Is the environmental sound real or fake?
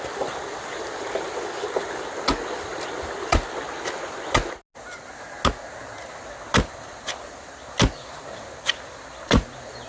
real